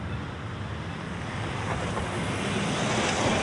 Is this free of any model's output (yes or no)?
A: yes